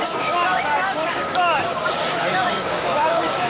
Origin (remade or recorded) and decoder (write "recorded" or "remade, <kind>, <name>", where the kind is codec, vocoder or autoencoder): remade, codec, DAC